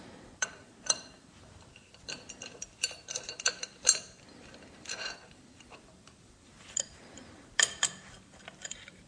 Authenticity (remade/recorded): remade